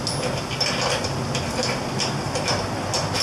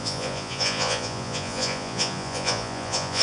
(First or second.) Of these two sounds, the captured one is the first